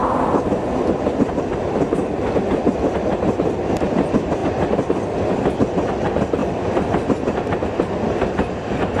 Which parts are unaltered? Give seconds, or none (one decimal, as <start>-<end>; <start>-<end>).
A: 0.0-4.4; 5.3-9.0